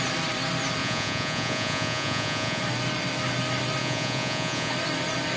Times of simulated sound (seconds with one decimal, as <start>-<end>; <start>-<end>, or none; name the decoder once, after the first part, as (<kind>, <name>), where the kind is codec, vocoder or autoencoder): 0.8-2.6 (vocoder, Vocos); 3.8-4.7